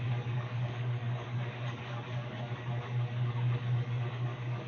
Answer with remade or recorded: remade